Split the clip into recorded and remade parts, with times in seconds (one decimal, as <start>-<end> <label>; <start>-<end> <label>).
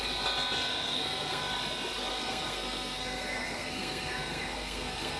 0.0-0.7 recorded; 0.7-1.4 remade; 1.4-2.1 recorded; 2.1-5.2 remade